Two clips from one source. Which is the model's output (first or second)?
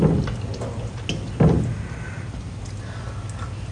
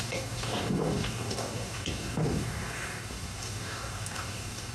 second